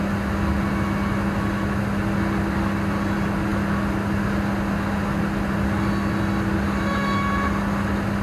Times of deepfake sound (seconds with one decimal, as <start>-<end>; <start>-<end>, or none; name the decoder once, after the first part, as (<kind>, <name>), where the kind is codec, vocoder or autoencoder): none